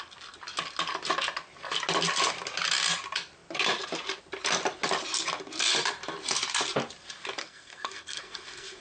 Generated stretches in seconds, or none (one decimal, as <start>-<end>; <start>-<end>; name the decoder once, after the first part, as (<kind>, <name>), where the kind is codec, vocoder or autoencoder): 7.4-8.8 (codec, SNAC)